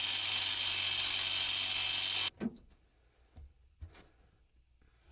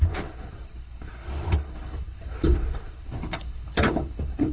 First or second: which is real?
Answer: first